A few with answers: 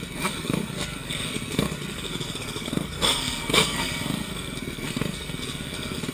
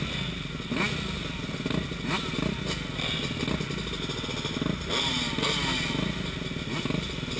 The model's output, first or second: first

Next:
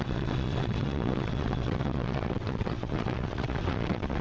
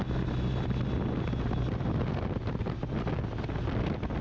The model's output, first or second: first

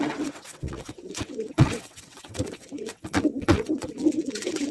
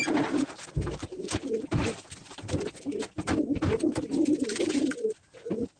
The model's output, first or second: first